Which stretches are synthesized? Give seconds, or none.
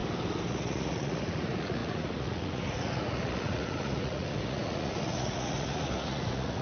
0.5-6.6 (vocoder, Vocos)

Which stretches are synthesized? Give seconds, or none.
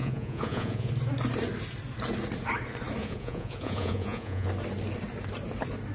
0.0-0.9 (vocoder, Vocos); 3.0-4.5